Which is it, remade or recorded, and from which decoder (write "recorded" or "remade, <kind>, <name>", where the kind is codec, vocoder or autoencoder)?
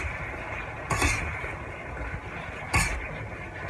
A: recorded